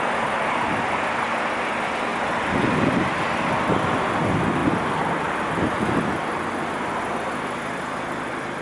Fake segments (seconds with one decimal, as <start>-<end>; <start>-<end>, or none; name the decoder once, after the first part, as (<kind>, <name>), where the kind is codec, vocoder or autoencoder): none